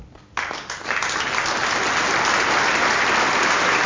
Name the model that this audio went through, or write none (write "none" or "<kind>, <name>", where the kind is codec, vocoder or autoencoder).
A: none